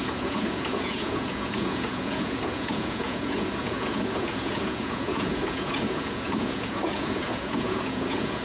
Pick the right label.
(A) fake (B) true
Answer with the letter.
A